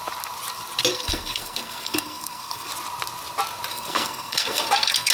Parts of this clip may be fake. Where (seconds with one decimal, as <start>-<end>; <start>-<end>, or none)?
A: 0.9-2.7; 3.7-5.1

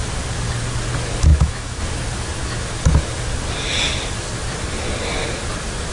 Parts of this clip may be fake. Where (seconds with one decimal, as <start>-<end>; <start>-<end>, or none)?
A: 1.3-1.8

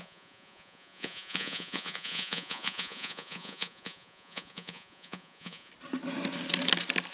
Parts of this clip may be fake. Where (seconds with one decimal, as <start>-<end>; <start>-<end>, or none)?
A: 0.0-5.7

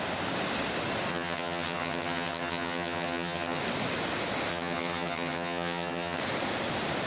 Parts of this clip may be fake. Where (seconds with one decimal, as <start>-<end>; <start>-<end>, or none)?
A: 1.1-3.6; 4.5-6.2

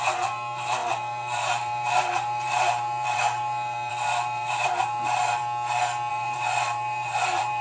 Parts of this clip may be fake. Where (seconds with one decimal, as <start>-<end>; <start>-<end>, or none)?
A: 0.0-5.4; 6.1-7.6

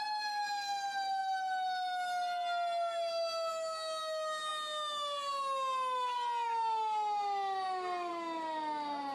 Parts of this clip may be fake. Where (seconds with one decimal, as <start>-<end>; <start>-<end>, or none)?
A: none